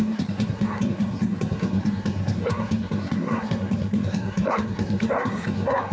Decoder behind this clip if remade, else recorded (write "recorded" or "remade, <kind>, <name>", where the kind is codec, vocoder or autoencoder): remade, codec, SNAC